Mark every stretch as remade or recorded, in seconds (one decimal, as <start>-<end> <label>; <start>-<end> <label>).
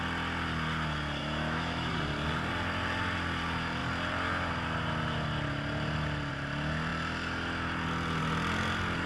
0.0-1.2 recorded; 1.2-1.9 remade; 1.9-9.1 recorded